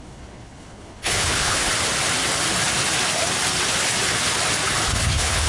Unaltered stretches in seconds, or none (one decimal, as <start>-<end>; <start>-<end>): 1.7-4.9